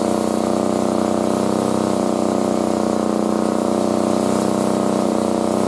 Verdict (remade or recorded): recorded